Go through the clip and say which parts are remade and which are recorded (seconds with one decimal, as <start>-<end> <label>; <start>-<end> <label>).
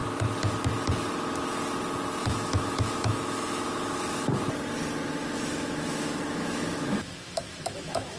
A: 0.0-2.2 recorded; 2.2-4.4 remade; 4.4-5.2 recorded; 5.2-8.2 remade